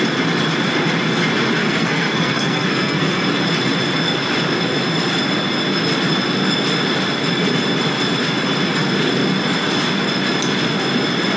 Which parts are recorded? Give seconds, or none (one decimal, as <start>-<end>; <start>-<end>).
0.0-1.6; 3.2-11.4